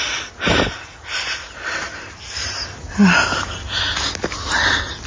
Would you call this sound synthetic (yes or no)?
no